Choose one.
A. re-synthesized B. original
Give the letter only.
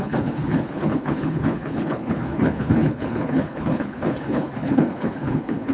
A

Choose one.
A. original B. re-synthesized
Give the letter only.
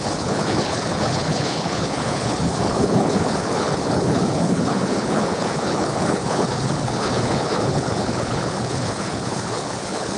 B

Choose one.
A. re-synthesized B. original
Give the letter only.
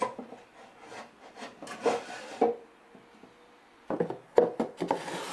B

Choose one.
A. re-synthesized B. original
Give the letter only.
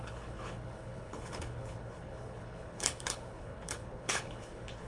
A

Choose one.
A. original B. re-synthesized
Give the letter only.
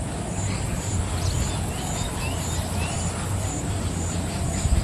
A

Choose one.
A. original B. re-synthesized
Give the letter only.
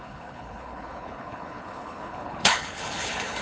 B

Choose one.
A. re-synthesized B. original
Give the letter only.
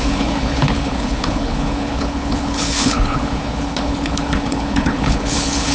A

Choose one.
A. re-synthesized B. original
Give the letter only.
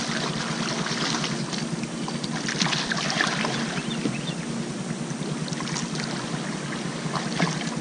B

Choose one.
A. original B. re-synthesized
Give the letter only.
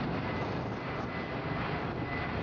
A